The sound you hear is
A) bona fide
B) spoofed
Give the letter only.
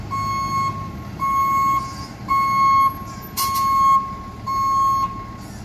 A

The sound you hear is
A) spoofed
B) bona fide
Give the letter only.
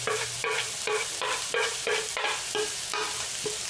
B